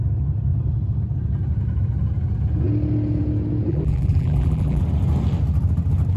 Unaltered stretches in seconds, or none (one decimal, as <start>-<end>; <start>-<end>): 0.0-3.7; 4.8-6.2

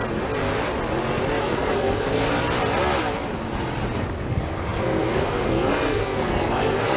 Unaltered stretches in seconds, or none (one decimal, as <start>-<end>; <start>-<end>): 0.0-1.4; 2.3-4.3

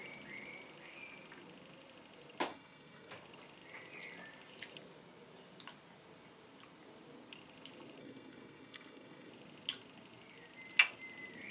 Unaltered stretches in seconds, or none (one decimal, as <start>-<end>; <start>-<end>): 0.0-2.5; 3.1-8.0; 9.3-11.5